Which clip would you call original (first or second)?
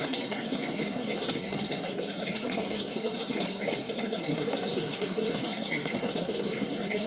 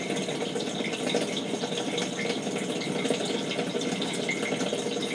second